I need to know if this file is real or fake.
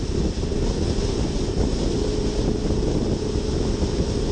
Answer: real